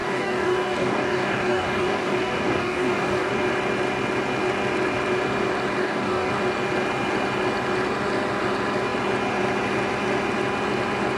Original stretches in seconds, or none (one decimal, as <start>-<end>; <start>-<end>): 3.3-5.8; 6.3-11.2